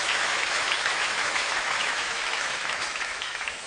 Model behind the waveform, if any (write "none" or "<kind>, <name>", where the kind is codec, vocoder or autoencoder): autoencoder, DAC-VAE